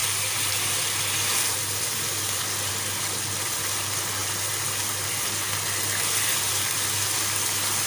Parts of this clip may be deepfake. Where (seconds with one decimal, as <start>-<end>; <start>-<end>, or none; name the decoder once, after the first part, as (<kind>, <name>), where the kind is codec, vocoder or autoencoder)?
0.0-2.7 (vocoder, BigVGAN v2)